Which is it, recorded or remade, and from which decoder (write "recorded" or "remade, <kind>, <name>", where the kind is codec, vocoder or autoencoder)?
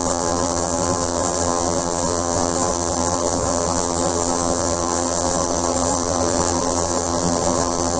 remade, vocoder, BigVGAN v2